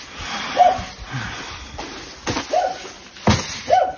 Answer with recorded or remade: recorded